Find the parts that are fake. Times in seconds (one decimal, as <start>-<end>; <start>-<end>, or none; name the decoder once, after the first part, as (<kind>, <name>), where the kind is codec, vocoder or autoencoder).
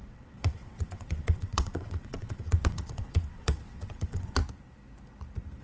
0.0-4.4 (vocoder, WaveNeXt)